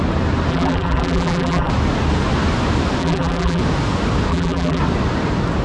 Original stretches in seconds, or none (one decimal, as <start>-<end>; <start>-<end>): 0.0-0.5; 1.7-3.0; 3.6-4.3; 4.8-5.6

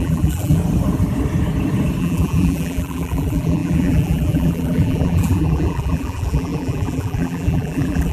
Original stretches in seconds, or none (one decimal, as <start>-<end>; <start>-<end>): 0.6-2.0

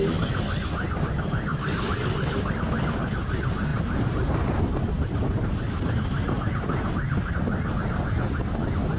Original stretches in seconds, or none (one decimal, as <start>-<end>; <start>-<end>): 0.0-3.7; 7.3-9.0